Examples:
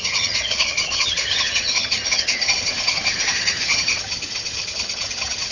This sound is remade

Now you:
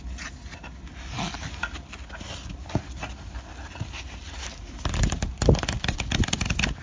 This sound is recorded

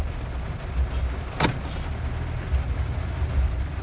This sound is recorded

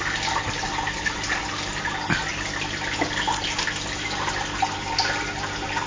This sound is recorded